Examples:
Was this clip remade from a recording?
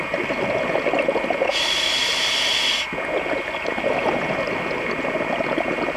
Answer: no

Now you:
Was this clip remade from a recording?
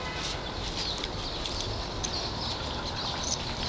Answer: no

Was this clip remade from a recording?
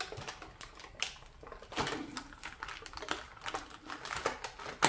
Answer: no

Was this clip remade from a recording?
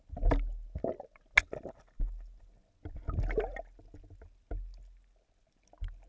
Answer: no